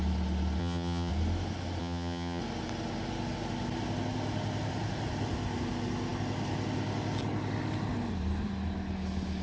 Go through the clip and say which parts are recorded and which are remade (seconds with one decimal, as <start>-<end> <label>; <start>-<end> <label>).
0.0-0.6 recorded; 0.6-1.1 remade; 1.1-1.8 recorded; 1.8-2.4 remade; 2.4-9.4 recorded